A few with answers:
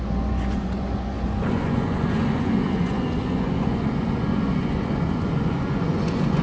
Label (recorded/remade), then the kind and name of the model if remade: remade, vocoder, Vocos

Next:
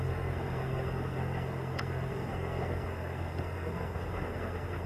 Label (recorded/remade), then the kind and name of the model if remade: remade, codec, SNAC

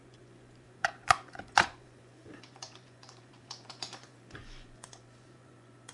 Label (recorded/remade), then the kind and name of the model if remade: remade, vocoder, Vocos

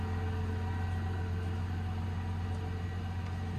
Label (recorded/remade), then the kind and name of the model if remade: recorded